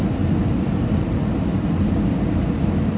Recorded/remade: recorded